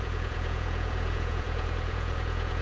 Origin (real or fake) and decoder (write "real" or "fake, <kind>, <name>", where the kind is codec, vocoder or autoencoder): fake, vocoder, Vocos